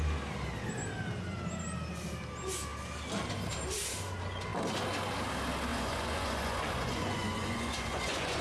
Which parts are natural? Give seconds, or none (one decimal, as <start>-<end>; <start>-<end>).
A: 0.0-5.7